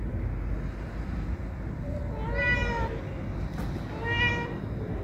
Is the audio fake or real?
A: real